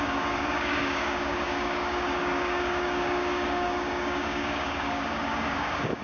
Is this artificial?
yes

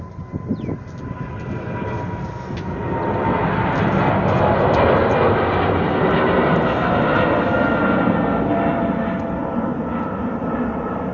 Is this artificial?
no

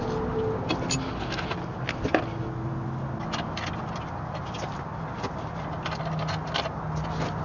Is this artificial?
no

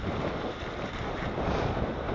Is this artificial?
no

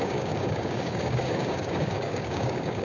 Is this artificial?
yes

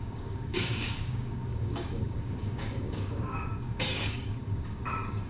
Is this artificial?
yes